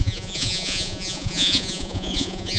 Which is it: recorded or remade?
remade